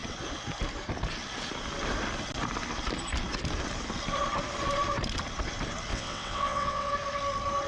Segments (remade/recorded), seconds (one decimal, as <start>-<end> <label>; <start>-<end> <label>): 0.0-5.9 recorded; 5.9-6.9 remade; 6.9-7.7 recorded